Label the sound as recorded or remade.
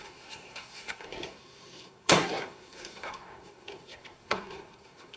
remade